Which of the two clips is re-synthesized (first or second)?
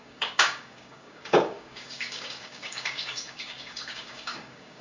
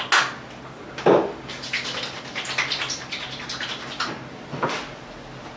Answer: first